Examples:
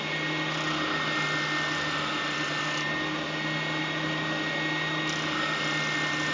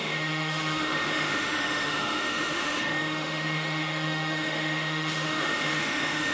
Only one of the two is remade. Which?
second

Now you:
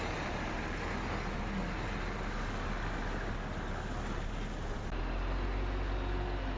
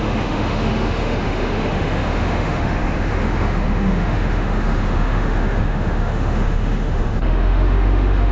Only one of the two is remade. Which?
second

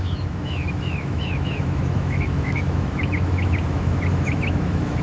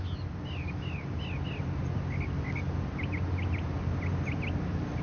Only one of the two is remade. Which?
first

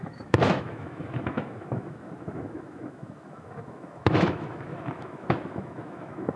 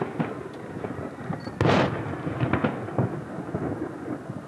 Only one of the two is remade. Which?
first